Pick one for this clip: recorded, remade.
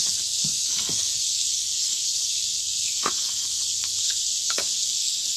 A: remade